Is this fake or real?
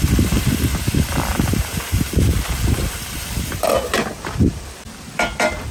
fake